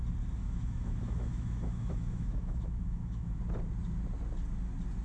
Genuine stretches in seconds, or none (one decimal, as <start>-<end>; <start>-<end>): 0.0-0.4; 3.4-5.0